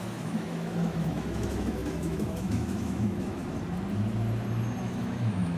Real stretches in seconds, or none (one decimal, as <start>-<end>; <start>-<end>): 3.4-4.8